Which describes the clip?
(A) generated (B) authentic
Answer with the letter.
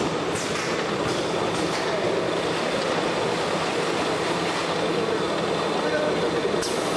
B